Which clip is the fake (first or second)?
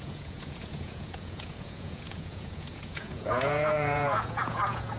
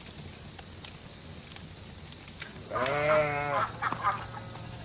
first